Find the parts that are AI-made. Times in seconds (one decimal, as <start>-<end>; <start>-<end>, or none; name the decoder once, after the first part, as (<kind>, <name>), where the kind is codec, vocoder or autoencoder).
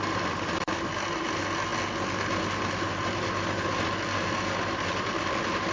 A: none